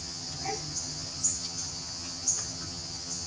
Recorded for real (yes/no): no